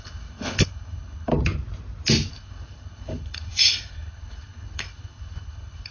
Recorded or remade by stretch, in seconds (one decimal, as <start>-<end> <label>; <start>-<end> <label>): 0.0-1.3 remade; 1.3-2.3 recorded; 2.3-5.9 remade